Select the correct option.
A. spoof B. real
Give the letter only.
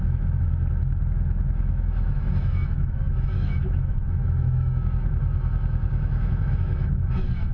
A